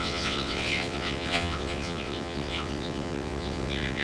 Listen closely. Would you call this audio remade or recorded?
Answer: remade